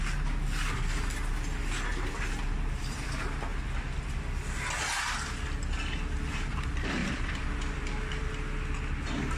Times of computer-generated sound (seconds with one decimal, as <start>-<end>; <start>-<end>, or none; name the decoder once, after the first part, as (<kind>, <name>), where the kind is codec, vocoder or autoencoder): 1.9-3.1 (vocoder, BigVGAN v2); 3.5-4.1; 7.0-8.3